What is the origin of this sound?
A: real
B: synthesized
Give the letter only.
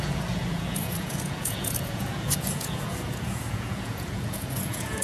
B